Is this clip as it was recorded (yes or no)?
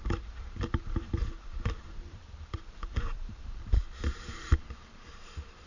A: no